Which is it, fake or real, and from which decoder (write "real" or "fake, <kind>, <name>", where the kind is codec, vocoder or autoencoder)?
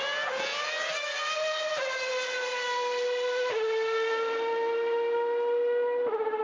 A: real